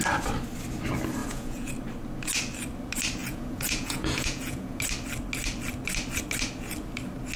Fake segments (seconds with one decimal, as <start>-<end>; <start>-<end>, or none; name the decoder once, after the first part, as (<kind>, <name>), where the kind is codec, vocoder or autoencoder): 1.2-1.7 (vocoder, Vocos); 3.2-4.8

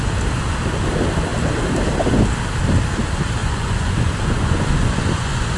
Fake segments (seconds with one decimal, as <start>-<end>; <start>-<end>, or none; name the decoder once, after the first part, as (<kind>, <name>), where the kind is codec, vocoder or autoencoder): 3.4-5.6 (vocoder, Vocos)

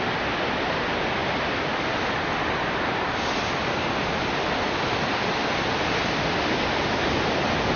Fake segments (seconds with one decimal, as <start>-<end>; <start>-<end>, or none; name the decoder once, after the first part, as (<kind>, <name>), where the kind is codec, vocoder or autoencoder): none

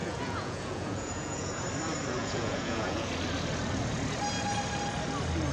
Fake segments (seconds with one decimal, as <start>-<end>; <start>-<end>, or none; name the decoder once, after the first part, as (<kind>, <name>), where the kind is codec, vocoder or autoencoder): 0.0-1.5 (vocoder, Vocos); 2.2-3.1

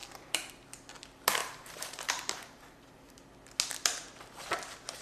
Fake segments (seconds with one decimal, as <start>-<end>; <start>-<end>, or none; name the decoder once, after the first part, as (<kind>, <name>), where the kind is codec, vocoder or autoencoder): 0.0-0.5 (vocoder, BigVGAN v2); 1.4-3.2

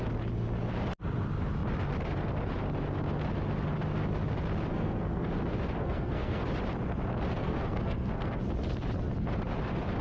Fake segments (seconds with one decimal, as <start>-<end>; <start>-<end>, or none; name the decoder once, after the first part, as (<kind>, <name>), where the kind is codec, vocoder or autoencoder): 4.7-5.3 (codec, SNAC); 5.8-6.4; 7.4-8.4

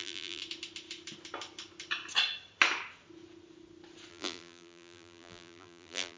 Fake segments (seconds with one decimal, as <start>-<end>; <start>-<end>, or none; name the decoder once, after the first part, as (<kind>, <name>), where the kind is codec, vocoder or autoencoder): 0.0-0.4 (vocoder, BigVGAN v2); 4.1-6.2